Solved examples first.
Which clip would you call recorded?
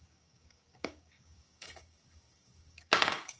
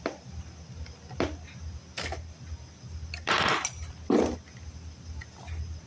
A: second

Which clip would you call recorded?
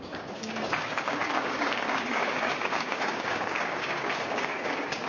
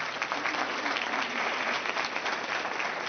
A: second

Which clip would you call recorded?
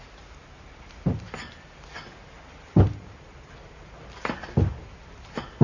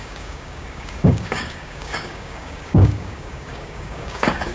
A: first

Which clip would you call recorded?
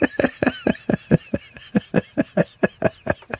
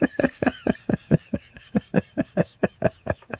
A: first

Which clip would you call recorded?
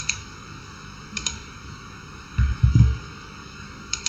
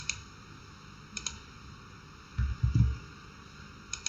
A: second